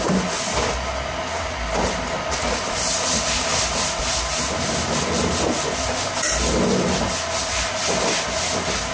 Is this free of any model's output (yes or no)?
yes